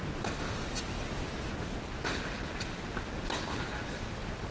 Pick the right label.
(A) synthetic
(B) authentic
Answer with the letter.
B